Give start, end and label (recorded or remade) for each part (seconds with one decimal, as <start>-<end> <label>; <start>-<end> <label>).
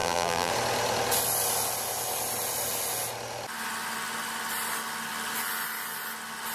0.0-0.5 remade; 0.5-6.5 recorded